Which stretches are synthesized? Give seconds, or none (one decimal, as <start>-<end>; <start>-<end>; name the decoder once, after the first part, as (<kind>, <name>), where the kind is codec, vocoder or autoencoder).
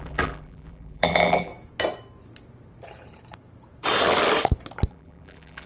0.0-1.5 (vocoder, BigVGAN v2); 4.9-5.7